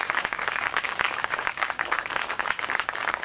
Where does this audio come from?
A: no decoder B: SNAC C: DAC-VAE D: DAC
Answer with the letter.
D